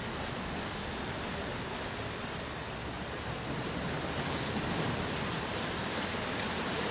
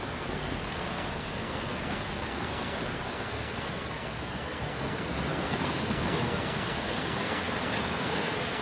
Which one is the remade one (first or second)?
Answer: second